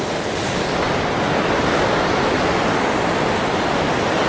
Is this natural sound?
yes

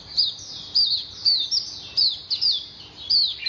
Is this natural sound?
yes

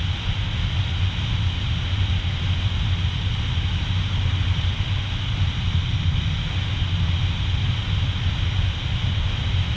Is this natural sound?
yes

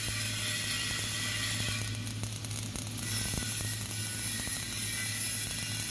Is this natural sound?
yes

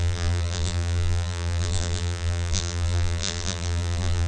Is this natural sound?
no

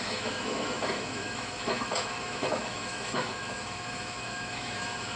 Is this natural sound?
no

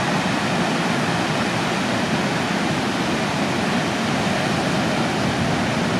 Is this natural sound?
yes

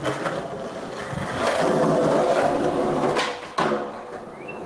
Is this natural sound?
yes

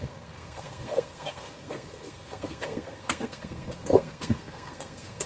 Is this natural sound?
no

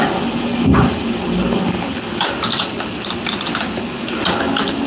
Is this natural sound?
yes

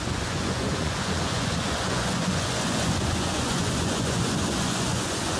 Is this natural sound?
no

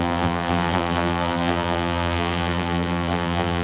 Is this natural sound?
no